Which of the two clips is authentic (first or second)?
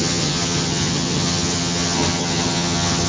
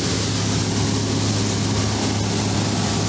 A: second